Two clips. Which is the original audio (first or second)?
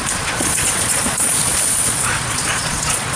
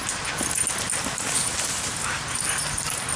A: second